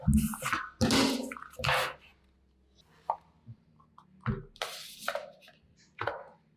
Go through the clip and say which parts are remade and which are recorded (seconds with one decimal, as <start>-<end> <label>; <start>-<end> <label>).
0.0-6.6 recorded